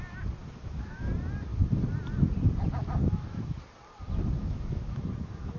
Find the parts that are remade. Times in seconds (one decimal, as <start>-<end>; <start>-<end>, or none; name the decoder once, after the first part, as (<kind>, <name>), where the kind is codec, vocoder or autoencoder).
0.4-1.1 (autoencoder, DAC-VAE); 3.0-3.6; 4.4-5.6